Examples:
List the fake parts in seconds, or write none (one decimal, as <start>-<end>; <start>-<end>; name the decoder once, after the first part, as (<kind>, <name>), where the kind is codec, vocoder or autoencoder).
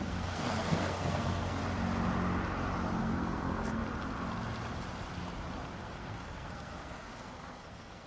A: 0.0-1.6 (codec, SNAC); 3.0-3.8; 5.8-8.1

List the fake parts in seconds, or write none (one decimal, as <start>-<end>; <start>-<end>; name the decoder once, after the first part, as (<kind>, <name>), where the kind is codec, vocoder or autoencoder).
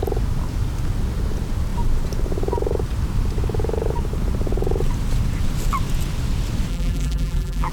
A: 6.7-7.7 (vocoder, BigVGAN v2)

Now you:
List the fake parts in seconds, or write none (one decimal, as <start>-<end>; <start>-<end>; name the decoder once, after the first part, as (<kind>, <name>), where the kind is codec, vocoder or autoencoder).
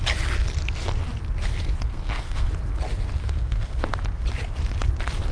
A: 1.9-2.5 (codec, SNAC); 3.2-3.8